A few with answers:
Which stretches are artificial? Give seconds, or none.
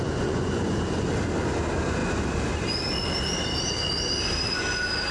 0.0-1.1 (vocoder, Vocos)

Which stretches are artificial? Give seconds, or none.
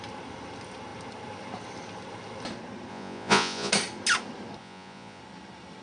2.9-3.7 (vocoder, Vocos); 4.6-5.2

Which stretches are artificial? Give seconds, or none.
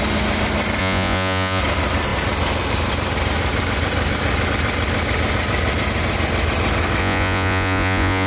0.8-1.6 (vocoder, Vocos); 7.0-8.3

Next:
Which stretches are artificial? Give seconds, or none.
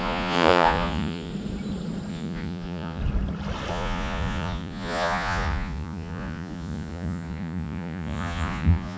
0.0-1.3 (vocoder, Vocos); 2.1-3.0; 3.7-9.0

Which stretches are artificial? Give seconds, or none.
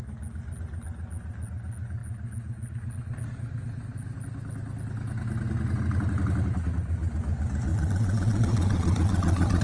7.7-9.6 (vocoder, Vocos)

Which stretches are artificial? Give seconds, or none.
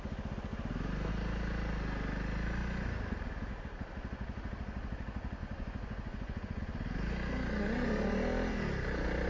5.4-6.6 (vocoder, Vocos)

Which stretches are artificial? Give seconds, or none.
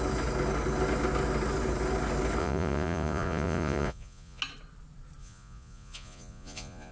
2.4-4.4 (vocoder, Vocos); 5.2-6.9